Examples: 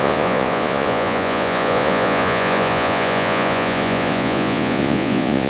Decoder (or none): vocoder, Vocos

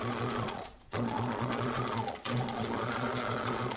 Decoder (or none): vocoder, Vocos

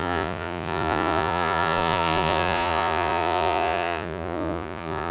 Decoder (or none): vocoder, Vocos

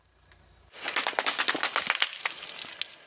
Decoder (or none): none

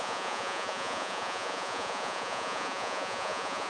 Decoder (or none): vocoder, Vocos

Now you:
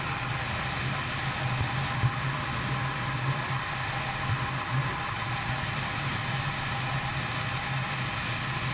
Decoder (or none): none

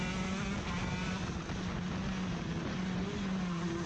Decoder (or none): none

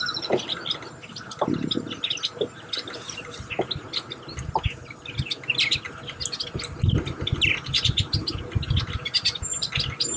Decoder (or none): none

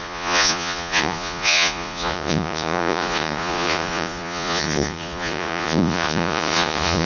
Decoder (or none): vocoder, Vocos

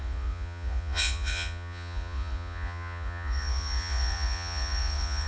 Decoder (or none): vocoder, Vocos